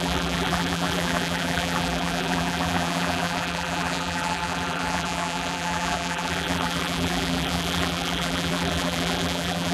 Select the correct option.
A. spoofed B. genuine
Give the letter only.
A